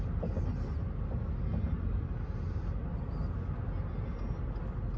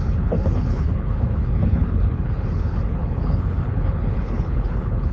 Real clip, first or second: first